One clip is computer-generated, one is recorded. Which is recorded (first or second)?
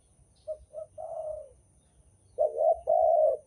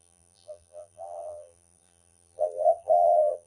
first